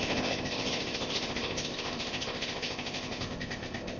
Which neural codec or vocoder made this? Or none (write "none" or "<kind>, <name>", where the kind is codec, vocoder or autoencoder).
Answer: codec, ZipCodec